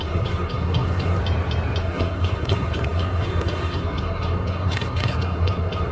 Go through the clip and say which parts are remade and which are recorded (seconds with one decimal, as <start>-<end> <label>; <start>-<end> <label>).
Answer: 0.0-1.2 remade; 1.2-1.8 recorded; 1.8-5.9 remade

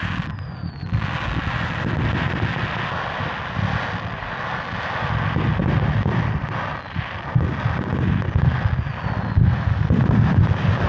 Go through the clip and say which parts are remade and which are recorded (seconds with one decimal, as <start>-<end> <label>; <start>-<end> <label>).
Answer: 0.0-10.9 recorded

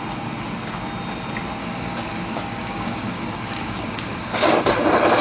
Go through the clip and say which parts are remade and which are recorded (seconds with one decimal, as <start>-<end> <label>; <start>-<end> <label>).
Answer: 0.0-1.6 recorded; 1.6-4.7 remade; 4.7-5.2 recorded

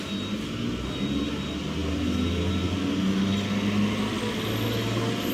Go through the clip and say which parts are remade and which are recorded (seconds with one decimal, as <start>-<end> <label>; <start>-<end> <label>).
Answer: 0.0-5.3 recorded